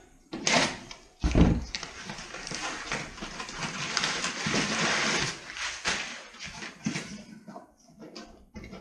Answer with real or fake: fake